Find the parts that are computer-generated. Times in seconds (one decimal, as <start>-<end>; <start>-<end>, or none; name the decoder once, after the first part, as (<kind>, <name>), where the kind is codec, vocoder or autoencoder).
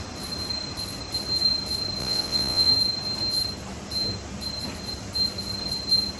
2.0-2.7 (vocoder, WaveNeXt)